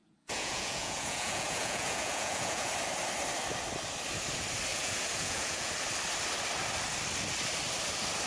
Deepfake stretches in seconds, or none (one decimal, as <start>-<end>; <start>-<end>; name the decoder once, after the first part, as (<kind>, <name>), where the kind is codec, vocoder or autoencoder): 0.0-2.7 (vocoder, Vocos); 4.7-5.7